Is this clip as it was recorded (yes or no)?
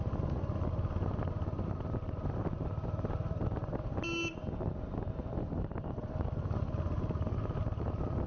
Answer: yes